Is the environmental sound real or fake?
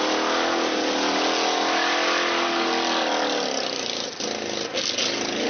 real